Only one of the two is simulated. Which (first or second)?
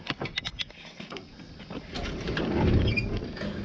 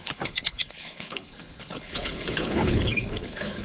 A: second